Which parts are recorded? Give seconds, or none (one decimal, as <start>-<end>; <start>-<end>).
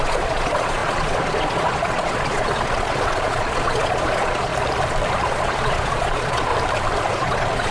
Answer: 4.5-5.3; 6.5-7.1